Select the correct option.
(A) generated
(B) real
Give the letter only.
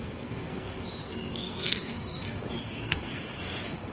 A